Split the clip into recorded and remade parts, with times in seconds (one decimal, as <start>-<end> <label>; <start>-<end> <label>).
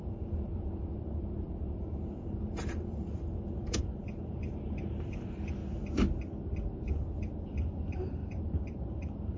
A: 0.0-5.6 remade; 5.6-6.7 recorded; 6.7-9.4 remade